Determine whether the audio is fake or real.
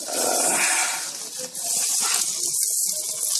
real